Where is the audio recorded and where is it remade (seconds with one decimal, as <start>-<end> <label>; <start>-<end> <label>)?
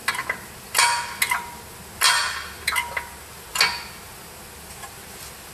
0.0-5.5 recorded